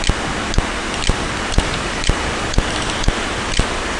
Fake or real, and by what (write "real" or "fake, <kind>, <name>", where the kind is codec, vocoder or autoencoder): real